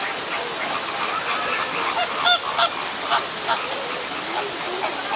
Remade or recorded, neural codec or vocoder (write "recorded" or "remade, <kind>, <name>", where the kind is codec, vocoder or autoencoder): remade, vocoder, BigVGAN v2